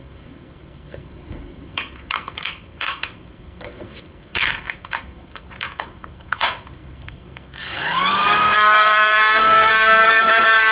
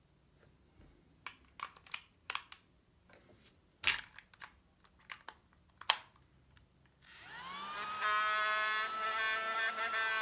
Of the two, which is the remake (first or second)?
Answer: first